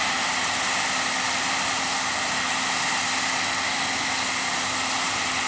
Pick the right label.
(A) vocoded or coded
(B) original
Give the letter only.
B